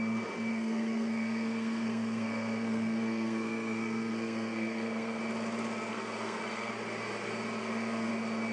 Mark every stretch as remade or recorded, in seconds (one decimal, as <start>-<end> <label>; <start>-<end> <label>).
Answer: 0.0-0.5 recorded; 0.5-5.2 remade; 5.2-5.9 recorded; 5.9-6.7 remade; 6.7-7.6 recorded; 7.6-8.1 remade; 8.1-8.5 recorded